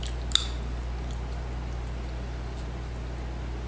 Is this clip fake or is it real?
real